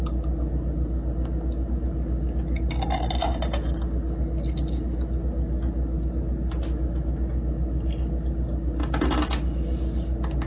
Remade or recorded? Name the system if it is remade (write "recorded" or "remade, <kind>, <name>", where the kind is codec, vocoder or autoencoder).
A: recorded